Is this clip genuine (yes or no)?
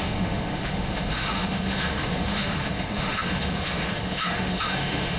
no